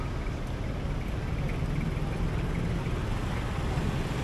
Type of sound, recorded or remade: recorded